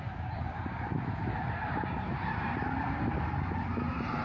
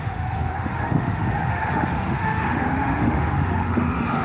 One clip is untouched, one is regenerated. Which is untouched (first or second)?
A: first